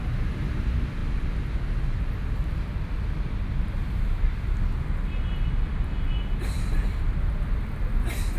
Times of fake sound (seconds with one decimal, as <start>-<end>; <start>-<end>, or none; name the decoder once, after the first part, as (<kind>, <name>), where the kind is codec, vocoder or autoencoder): none